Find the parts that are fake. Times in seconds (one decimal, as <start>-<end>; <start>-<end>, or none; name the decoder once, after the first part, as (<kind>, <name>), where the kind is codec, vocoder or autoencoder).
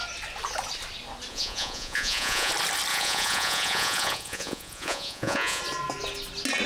1.3-2.5 (vocoder, Vocos); 2.9-5.6